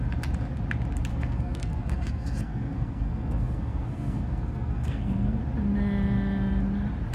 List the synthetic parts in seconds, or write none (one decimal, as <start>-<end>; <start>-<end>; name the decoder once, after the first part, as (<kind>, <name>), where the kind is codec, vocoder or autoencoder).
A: 1.1-5.4 (codec, SNAC)